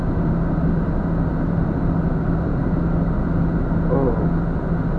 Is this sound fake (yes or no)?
no